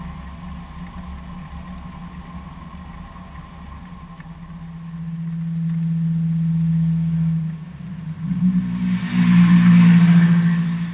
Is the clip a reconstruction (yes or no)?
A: no